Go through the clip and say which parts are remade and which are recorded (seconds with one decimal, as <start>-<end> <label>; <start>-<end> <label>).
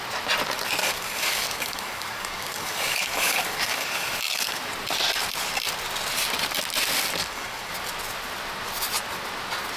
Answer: 0.0-0.8 recorded; 0.8-4.6 remade; 4.6-7.2 recorded; 7.2-7.7 remade; 7.7-9.8 recorded